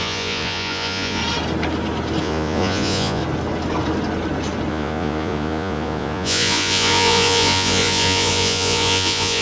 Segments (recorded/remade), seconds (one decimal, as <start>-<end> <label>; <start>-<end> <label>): 0.0-1.2 remade; 1.2-2.2 recorded; 2.2-3.2 remade; 3.2-4.7 recorded; 4.7-9.4 remade